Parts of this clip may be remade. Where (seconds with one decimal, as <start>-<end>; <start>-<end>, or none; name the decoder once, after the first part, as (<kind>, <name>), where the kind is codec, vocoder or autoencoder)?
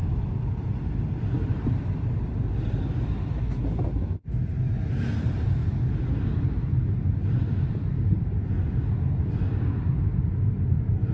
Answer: none